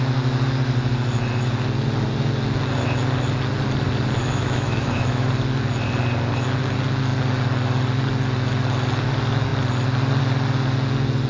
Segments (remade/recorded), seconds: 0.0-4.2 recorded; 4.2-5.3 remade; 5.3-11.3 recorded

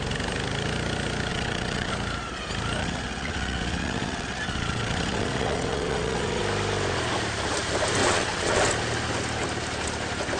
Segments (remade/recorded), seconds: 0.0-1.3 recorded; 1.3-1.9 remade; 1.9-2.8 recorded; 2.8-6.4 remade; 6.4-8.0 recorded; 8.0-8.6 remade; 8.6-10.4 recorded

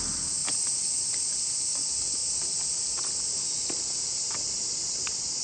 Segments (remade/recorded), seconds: 0.0-5.4 recorded